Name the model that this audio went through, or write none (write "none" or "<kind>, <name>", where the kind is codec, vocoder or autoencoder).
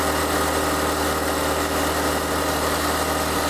none